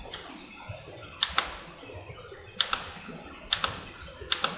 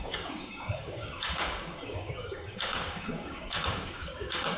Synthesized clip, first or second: second